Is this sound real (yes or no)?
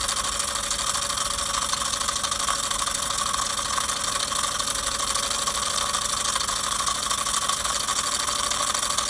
yes